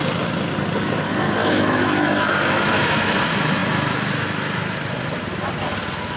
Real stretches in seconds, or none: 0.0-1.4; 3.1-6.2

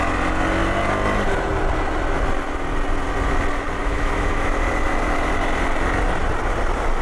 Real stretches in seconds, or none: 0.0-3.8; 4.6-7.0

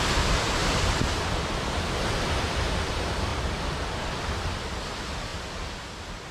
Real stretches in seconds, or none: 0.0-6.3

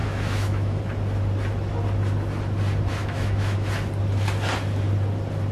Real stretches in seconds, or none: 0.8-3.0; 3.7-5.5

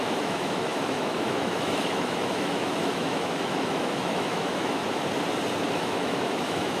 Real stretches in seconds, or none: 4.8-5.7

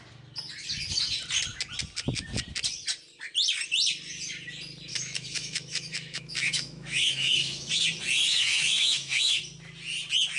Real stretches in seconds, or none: 0.0-4.9; 7.7-8.3; 9.4-10.4

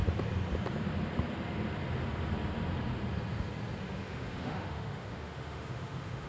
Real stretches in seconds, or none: 0.0-3.8

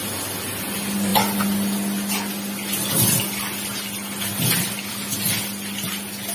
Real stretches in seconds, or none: 0.0-6.3